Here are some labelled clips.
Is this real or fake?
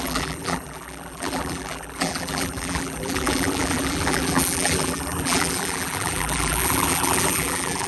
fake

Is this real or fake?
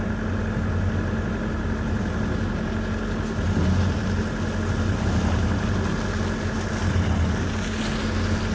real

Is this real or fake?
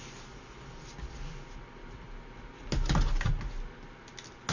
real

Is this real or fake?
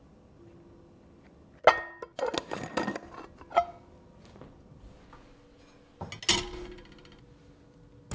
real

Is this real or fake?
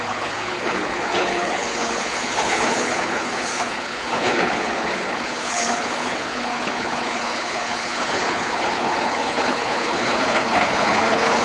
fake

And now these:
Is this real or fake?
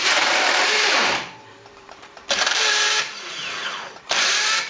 fake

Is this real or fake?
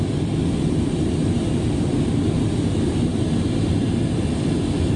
real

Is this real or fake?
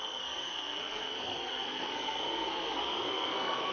fake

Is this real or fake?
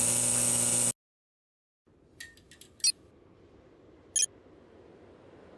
real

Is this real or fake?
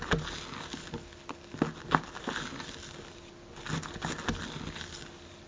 real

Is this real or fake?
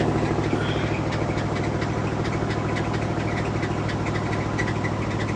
real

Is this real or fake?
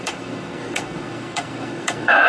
fake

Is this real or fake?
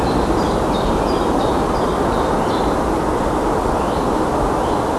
real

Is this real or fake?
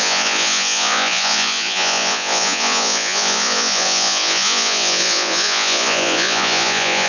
fake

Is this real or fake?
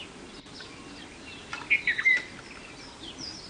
real